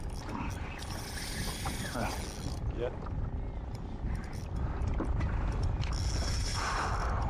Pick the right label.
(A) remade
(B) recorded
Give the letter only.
B